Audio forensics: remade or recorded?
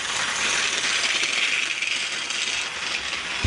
recorded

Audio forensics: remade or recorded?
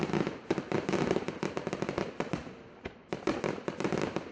recorded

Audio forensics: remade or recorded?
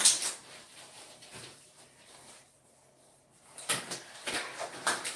remade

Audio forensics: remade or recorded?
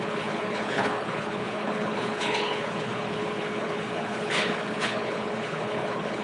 remade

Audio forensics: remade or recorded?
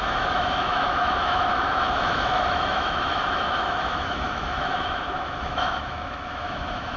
remade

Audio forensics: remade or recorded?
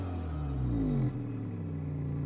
recorded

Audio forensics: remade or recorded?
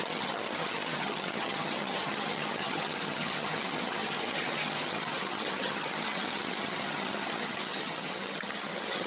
remade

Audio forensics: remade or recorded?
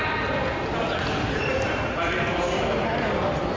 recorded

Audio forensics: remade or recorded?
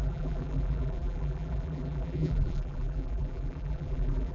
remade